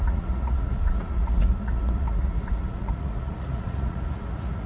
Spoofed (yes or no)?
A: yes